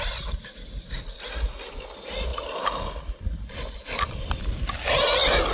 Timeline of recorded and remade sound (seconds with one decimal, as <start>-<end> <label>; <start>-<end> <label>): 0.0-5.5 recorded

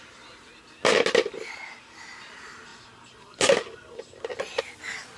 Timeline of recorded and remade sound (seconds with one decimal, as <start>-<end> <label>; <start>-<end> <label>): 0.0-5.2 recorded

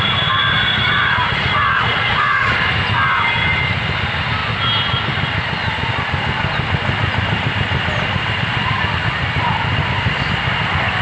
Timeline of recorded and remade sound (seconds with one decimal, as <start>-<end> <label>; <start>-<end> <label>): 0.0-0.7 recorded; 0.7-2.5 remade; 2.5-11.0 recorded

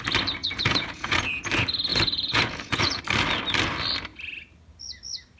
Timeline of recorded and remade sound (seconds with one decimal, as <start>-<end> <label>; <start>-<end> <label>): 0.0-0.4 recorded; 0.4-1.4 remade; 1.4-1.9 recorded; 1.9-3.0 remade; 3.0-5.4 recorded

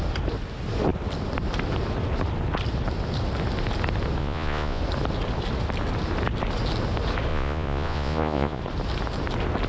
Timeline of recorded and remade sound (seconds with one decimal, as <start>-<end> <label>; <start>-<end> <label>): 0.0-4.2 recorded; 4.2-4.8 remade; 4.8-7.3 recorded; 7.3-8.6 remade; 8.6-9.7 recorded

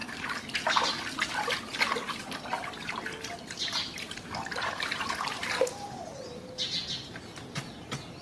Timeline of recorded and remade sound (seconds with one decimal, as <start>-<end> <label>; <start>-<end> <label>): 0.0-8.2 recorded

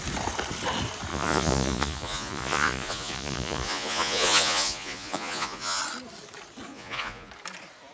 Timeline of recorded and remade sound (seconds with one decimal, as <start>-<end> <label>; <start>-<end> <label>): 0.0-1.1 recorded; 1.1-5.8 remade; 5.8-6.7 recorded; 6.7-7.3 remade; 7.3-7.9 recorded